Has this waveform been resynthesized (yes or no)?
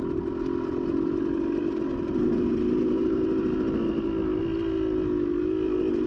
no